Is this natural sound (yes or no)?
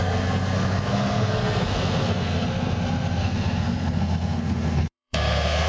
no